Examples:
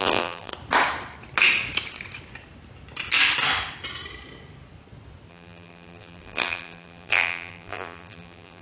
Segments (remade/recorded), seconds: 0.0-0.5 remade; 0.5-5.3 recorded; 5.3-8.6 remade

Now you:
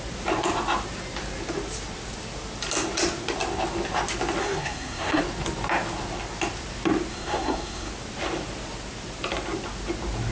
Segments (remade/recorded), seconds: 0.0-4.4 recorded; 4.4-5.2 remade; 5.2-7.1 recorded; 7.1-7.9 remade; 7.9-10.3 recorded

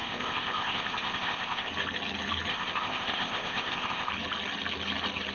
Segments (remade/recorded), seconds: 0.0-1.7 remade; 1.7-2.5 recorded; 2.5-4.1 remade; 4.1-5.3 recorded

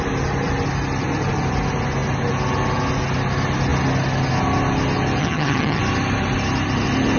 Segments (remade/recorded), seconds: 0.0-5.2 recorded; 5.2-5.8 remade; 5.8-7.2 recorded

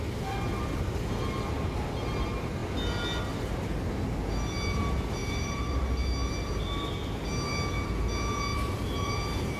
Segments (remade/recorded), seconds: 0.0-5.2 recorded; 5.2-5.8 remade; 5.8-8.5 recorded; 8.5-9.1 remade; 9.1-9.6 recorded

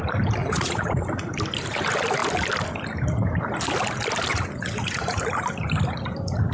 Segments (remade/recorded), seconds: 0.0-0.4 recorded; 0.4-1.0 remade; 1.0-4.3 recorded; 4.3-5.2 remade; 5.2-6.5 recorded

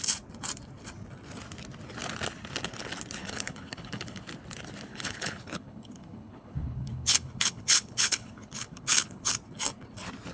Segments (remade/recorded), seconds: 0.0-3.2 recorded; 3.2-4.2 remade; 4.2-4.9 recorded; 4.9-9.3 remade; 9.3-10.3 recorded